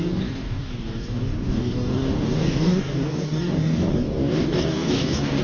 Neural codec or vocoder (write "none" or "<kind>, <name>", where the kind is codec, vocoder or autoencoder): codec, DAC